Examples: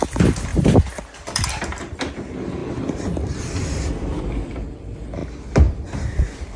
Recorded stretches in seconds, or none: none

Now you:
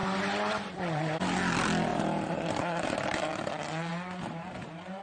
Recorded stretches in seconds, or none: 0.0-1.9; 3.3-3.9